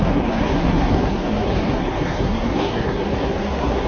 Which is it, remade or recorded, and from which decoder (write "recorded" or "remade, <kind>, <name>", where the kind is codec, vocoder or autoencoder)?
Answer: remade, codec, SNAC